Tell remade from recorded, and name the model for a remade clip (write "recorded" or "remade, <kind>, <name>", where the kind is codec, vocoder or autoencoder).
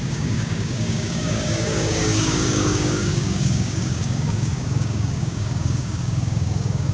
remade, codec, DAC